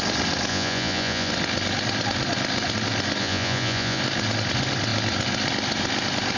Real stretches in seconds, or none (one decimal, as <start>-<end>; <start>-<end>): 0.0-0.5; 1.3-3.2; 4.0-6.4